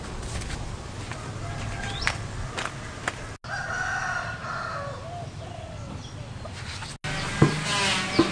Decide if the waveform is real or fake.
real